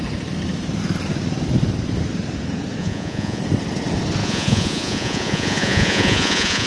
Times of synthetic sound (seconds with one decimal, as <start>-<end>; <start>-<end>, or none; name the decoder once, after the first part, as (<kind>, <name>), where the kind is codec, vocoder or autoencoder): 2.8-3.4 (vocoder, Vocos); 4.2-6.7